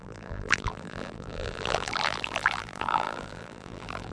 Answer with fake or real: fake